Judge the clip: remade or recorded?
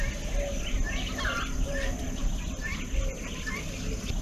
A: recorded